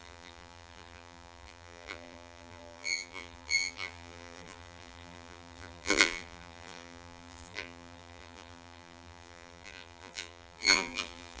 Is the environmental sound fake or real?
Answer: fake